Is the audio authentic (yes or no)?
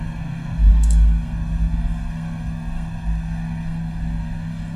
no